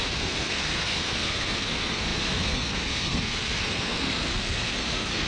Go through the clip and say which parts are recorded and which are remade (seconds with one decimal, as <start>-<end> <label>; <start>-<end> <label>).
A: 0.0-5.3 remade

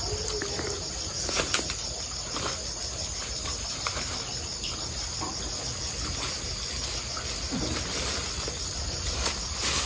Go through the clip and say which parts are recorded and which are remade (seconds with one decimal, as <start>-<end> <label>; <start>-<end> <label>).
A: 0.0-9.9 recorded